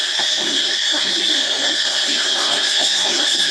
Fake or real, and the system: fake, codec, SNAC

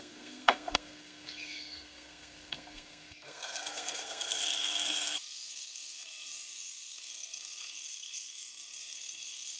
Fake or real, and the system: fake, codec, SNAC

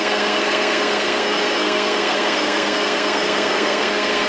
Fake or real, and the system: fake, codec, SNAC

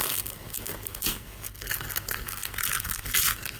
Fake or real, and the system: fake, codec, SNAC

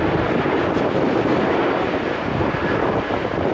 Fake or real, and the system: real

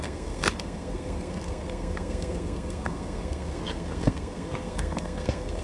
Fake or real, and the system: fake, codec, SNAC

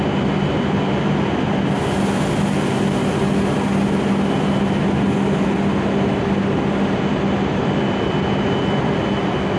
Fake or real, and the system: real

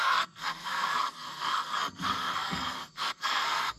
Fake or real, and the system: fake, codec, SNAC